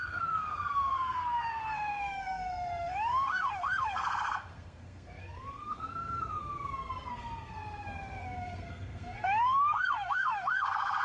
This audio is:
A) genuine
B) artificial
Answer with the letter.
B